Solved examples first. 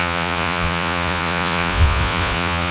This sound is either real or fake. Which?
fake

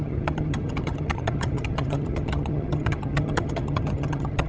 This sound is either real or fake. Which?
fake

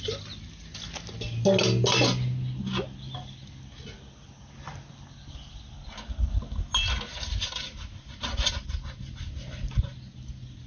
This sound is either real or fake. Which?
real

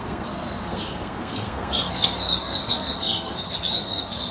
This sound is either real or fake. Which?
fake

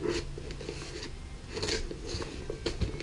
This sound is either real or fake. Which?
real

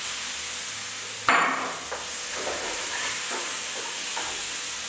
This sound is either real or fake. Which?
real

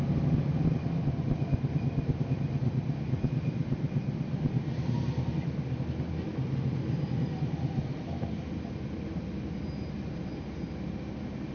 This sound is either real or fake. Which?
real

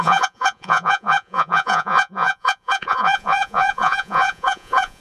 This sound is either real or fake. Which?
fake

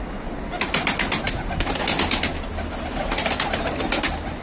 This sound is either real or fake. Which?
real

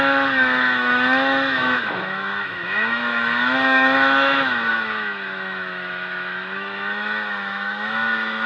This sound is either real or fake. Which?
fake